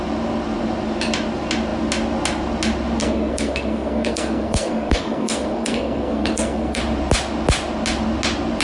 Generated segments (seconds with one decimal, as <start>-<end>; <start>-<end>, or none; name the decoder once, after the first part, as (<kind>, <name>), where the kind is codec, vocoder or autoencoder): 3.0-6.8 (codec, SNAC)